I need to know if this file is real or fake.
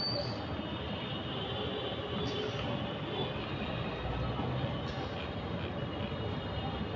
real